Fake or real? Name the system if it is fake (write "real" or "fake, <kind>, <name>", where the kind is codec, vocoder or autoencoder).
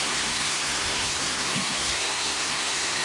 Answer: fake, codec, SNAC